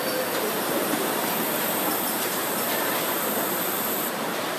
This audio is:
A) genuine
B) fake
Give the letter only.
B